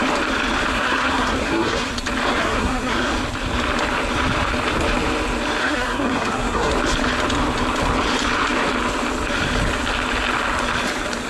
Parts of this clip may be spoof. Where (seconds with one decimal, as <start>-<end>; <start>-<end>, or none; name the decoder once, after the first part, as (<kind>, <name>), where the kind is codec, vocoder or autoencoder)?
0.7-1.9 (codec, SNAC); 2.4-3.1; 5.6-6.7